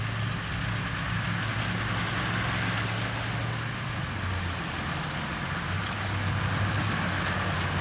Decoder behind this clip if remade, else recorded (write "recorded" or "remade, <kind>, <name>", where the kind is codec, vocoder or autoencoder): recorded